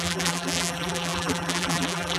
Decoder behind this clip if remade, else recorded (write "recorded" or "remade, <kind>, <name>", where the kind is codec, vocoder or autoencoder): remade, vocoder, BigVGAN v2